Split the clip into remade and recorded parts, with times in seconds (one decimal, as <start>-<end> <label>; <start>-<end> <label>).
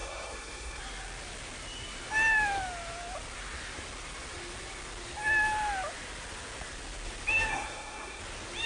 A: 0.0-0.8 remade; 0.8-7.5 recorded; 7.5-8.2 remade; 8.2-8.7 recorded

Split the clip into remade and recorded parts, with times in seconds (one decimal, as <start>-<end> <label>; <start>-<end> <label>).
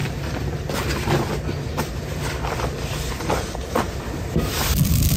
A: 0.0-5.2 recorded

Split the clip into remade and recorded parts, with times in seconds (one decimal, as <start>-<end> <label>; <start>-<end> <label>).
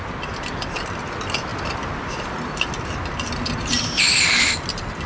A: 0.0-5.1 recorded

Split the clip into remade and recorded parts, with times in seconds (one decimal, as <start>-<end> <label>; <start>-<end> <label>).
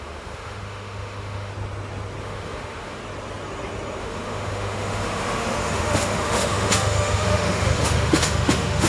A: 0.0-1.5 remade; 1.5-2.2 recorded; 2.2-3.0 remade; 3.0-4.0 recorded; 4.0-8.9 remade